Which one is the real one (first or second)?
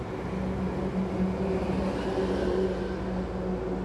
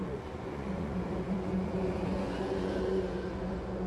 first